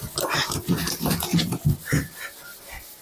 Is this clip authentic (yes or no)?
yes